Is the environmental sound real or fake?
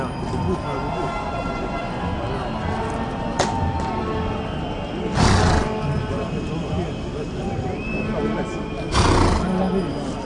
real